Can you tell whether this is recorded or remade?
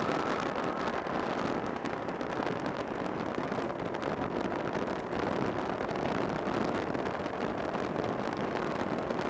recorded